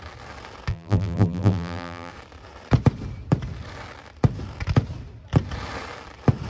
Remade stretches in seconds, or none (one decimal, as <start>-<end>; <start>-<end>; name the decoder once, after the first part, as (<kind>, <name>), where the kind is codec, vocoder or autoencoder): 0.7-2.1 (vocoder, BigVGAN v2)